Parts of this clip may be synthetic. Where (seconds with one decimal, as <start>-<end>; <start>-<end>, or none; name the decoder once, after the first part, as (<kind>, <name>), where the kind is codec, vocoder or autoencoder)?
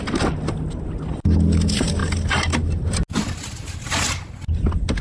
none